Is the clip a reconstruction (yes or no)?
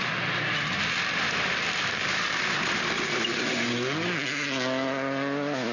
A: no